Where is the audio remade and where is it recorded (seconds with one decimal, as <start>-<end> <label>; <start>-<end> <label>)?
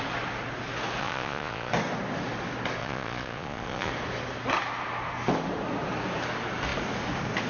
0.0-1.0 recorded; 1.0-1.7 remade; 1.7-2.8 recorded; 2.8-3.9 remade; 3.9-7.5 recorded